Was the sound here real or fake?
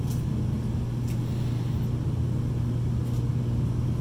real